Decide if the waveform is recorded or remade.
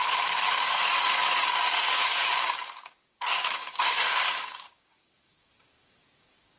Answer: remade